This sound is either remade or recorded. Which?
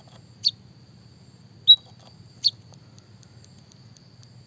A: recorded